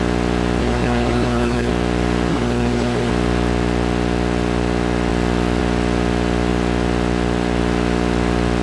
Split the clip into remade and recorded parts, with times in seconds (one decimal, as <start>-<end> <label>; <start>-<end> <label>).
0.0-0.6 recorded; 0.6-1.7 remade; 1.7-2.3 recorded; 2.3-3.1 remade; 3.1-8.6 recorded